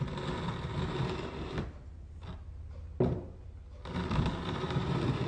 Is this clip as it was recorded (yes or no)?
yes